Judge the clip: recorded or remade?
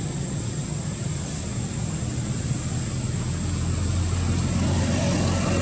recorded